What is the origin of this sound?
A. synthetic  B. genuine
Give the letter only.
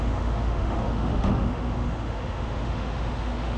A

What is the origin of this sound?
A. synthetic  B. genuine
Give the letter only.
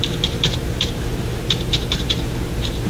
A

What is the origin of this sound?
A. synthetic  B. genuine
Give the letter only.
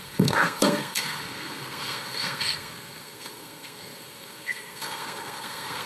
A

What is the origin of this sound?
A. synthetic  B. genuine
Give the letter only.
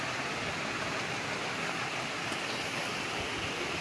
B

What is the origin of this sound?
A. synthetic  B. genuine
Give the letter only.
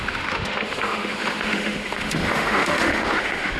A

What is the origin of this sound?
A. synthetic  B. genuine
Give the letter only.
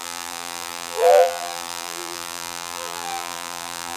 A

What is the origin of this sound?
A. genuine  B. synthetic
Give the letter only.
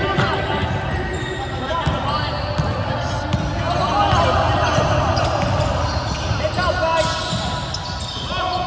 A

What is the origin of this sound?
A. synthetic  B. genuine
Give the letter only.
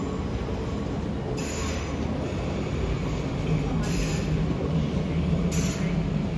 B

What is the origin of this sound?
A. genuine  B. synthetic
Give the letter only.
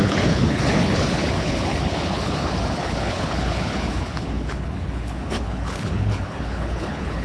B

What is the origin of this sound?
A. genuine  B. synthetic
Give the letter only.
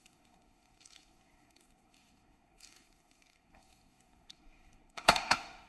B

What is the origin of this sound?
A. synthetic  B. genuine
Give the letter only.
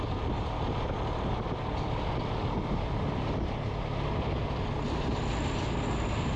B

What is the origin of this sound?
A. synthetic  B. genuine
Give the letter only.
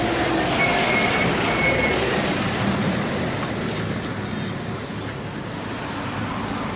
B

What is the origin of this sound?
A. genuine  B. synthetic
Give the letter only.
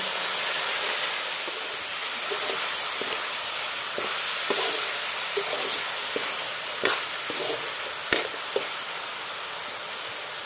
A